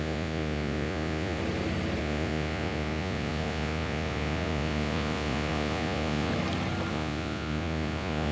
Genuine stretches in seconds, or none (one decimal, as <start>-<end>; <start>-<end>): 1.4-2.0; 6.3-6.9